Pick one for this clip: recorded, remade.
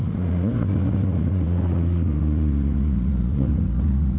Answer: remade